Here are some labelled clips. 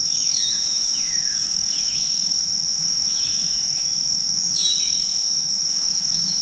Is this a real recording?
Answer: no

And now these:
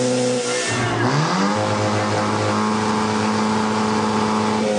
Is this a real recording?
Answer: yes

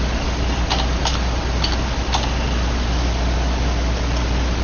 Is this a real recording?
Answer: yes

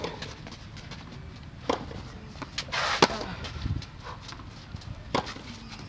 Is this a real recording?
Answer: yes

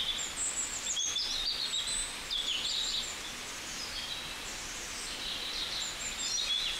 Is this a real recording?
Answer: yes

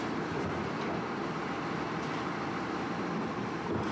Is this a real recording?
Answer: yes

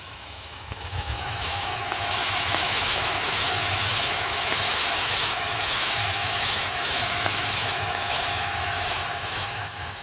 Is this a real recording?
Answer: no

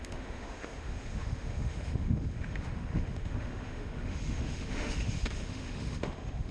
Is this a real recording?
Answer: no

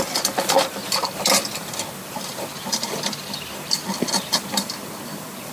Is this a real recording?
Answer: no